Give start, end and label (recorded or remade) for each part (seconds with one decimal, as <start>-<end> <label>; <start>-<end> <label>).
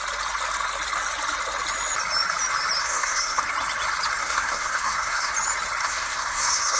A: 0.0-2.8 recorded; 2.8-3.4 remade; 3.4-4.2 recorded; 4.2-5.3 remade; 5.3-5.8 recorded; 5.8-6.8 remade